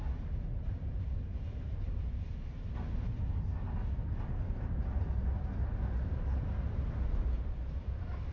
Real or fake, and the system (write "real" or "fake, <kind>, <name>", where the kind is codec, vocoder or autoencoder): real